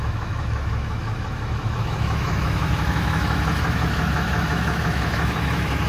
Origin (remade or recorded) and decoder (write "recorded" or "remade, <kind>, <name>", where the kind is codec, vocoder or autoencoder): remade, autoencoder, DAC-VAE